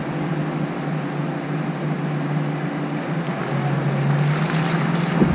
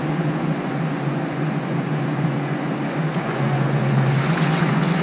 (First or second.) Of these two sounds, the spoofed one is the second